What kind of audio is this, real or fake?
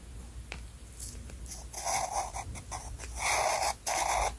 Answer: real